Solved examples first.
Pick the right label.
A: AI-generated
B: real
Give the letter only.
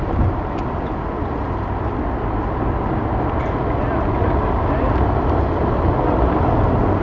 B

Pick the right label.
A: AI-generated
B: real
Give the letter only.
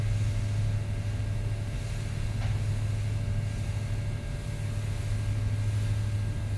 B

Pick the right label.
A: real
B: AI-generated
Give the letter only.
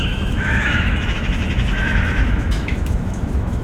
B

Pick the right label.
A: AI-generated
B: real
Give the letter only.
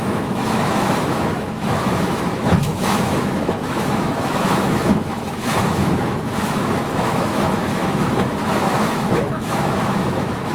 A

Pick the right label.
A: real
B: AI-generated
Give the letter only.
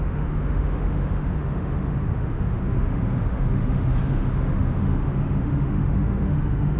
B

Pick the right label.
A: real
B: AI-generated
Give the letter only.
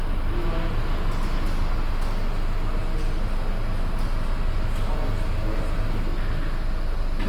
A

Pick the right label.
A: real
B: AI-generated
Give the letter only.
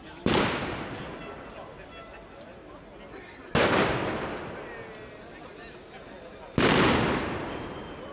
A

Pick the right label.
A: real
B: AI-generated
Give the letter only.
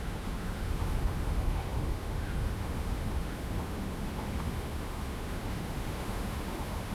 B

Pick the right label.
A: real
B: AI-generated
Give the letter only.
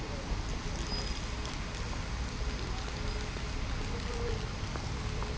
A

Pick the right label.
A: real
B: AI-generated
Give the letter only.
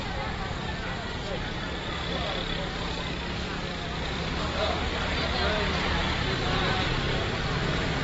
A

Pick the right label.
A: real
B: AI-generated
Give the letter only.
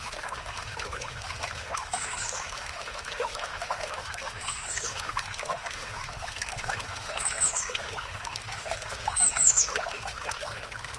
B